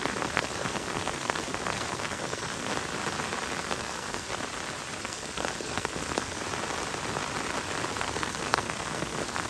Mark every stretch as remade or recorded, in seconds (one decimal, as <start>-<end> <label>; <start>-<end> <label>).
0.0-2.7 remade; 2.7-3.6 recorded; 3.6-4.3 remade; 4.3-5.0 recorded; 5.0-6.4 remade; 6.4-7.9 recorded; 7.9-9.5 remade